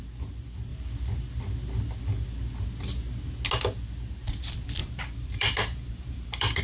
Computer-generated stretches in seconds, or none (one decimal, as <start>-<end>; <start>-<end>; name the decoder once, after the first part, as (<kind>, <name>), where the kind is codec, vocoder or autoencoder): 4.8-6.6 (vocoder, BigVGAN v2)